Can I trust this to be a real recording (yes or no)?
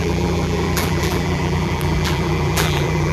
no